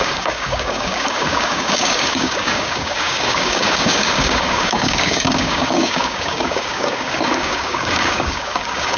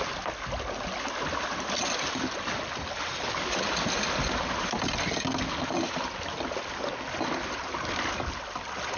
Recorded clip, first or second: second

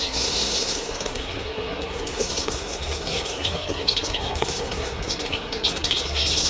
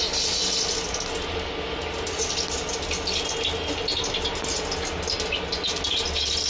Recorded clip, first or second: second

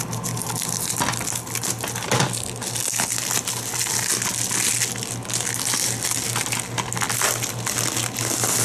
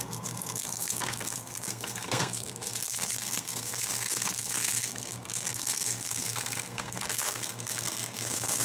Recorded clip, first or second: first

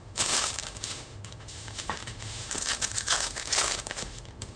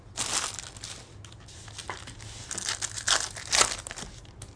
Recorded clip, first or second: second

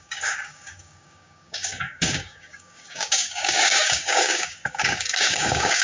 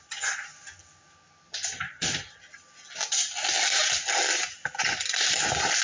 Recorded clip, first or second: second